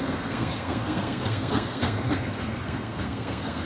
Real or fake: fake